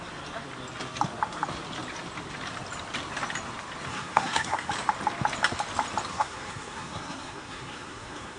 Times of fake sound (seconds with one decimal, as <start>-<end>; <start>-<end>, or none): 3.9-4.7; 6.1-8.4